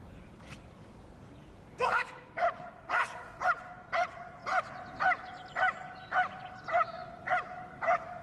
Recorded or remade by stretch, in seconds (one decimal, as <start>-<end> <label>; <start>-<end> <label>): 0.0-4.4 remade; 4.4-5.0 recorded; 5.0-8.2 remade